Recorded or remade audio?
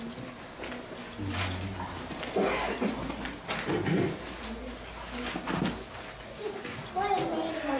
recorded